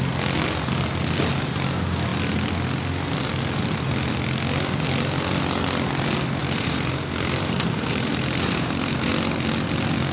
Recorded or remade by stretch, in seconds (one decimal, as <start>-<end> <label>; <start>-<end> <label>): 0.0-6.4 recorded; 6.4-9.1 remade; 9.1-10.1 recorded